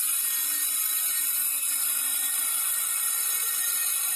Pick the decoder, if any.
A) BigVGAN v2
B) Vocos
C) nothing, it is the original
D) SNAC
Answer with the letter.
C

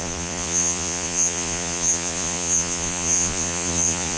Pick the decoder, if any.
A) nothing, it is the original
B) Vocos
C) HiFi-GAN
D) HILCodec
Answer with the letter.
B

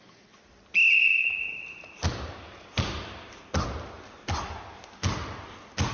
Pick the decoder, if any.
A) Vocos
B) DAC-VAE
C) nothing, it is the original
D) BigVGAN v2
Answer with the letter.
C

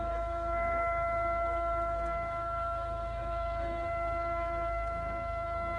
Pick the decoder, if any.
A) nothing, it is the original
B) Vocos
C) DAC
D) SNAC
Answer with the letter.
D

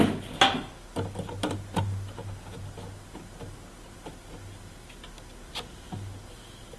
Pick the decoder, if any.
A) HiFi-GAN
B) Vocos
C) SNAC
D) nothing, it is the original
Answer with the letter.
D